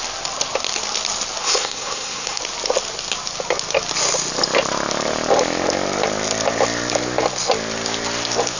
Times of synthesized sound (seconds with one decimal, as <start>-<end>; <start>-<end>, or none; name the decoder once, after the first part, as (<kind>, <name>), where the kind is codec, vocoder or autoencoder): 1.4-2.4 (codec, SNAC)